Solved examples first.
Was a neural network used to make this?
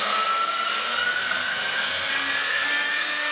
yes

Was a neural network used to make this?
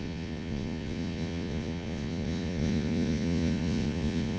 yes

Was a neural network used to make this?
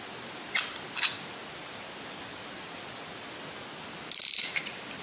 no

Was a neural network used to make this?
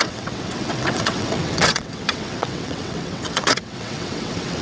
yes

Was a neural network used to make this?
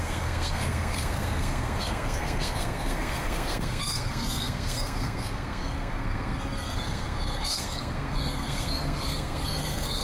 yes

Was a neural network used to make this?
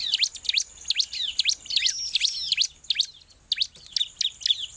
no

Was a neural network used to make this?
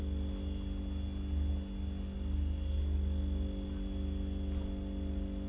no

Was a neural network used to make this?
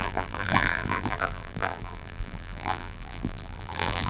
yes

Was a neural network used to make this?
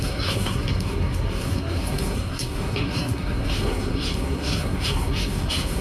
yes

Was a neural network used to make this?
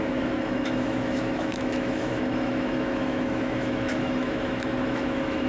yes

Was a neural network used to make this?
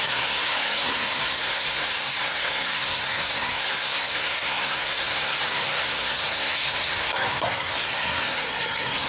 yes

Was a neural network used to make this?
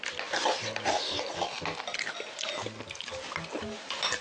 no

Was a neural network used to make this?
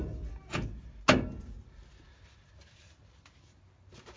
no